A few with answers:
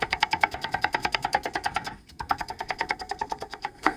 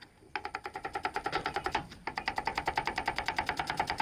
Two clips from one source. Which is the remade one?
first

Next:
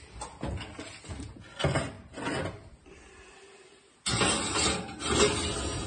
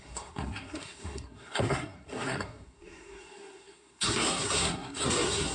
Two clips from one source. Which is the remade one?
second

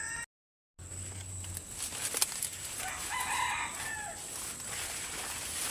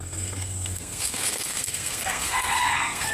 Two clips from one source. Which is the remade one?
second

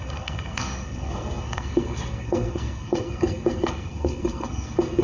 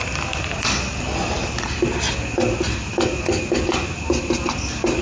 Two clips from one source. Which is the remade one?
first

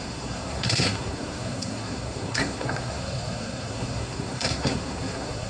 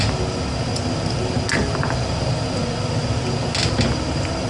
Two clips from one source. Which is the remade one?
first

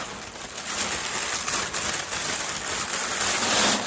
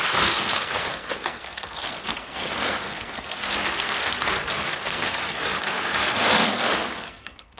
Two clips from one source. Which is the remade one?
second